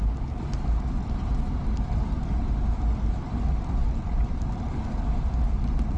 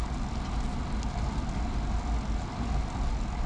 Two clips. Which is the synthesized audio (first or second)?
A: first